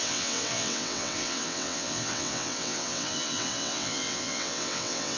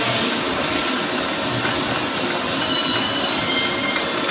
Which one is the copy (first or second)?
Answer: first